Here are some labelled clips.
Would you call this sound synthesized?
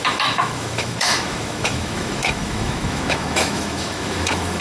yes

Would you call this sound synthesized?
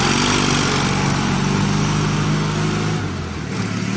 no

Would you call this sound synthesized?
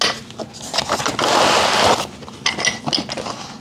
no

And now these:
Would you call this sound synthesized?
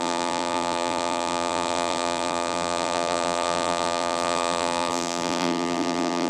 yes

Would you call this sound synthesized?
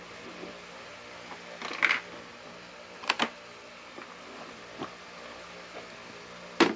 no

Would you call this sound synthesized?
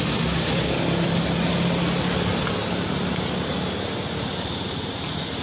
no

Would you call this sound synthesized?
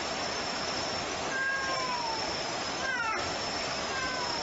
no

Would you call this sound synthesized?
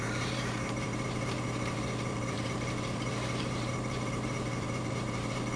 yes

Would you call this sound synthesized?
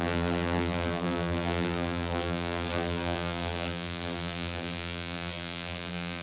yes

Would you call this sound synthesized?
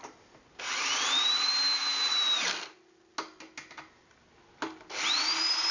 no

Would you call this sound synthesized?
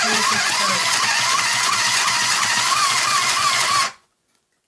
yes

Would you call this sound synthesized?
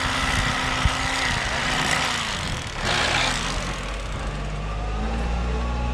no